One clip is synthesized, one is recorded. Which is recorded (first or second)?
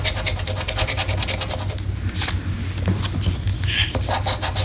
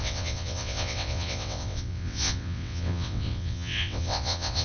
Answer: first